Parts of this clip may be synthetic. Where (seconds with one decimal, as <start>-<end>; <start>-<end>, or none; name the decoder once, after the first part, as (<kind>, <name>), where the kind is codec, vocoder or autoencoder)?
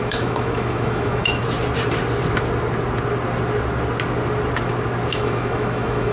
0.0-1.4 (autoencoder, DAC-VAE); 5.1-6.1